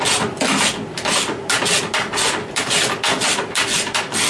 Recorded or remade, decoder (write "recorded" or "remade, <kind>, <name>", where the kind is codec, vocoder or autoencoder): recorded